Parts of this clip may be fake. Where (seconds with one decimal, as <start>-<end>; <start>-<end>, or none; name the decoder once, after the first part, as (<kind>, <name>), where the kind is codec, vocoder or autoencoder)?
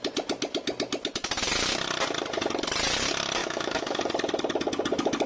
3.4-4.0 (autoencoder, DAC-VAE)